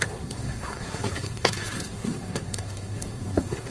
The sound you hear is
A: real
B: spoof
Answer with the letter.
B